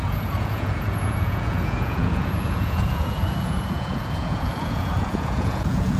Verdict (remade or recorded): remade